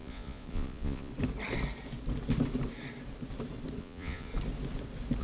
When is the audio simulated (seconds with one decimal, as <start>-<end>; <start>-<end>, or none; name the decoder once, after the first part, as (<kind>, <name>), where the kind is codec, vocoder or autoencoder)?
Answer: 0.0-1.1 (vocoder, Vocos); 3.8-4.3